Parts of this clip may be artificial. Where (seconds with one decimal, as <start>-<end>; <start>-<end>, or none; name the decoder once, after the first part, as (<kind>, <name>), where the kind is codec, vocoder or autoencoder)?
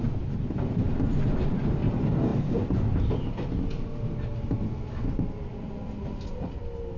5.5-6.6 (vocoder, Vocos)